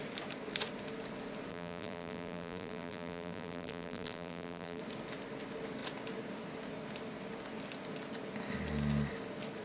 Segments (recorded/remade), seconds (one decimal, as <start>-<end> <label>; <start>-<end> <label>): 0.0-1.5 recorded; 1.5-4.8 remade; 4.8-9.6 recorded